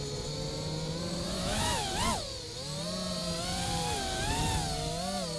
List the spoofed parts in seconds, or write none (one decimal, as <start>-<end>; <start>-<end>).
1.4-1.9